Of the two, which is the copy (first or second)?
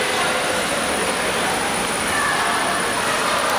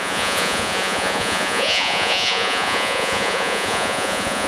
second